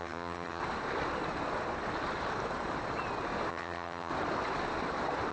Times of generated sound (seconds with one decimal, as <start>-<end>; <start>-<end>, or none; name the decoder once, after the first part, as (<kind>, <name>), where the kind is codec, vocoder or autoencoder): 0.0-0.6 (vocoder, HiFi-GAN); 3.5-4.1